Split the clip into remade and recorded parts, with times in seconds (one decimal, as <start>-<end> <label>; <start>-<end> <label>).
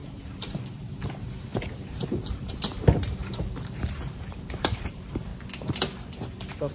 0.0-5.3 remade; 5.3-6.0 recorded; 6.0-6.7 remade